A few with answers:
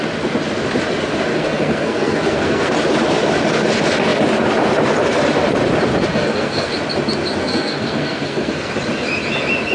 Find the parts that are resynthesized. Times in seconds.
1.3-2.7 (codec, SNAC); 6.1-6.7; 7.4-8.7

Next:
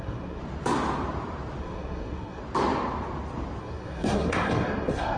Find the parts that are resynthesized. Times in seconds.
0.0-0.4 (codec, SNAC); 1.6-2.4; 3.6-5.2